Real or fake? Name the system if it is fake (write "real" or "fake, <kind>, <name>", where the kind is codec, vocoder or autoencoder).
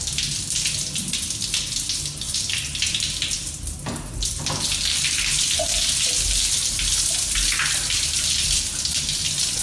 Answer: real